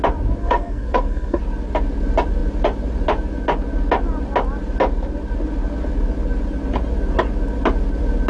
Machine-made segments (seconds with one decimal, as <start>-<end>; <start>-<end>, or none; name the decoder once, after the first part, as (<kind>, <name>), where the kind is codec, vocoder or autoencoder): 0.4-1.4 (codec, SNAC)